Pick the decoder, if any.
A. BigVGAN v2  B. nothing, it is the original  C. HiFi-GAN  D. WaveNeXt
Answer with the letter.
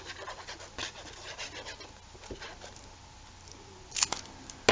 B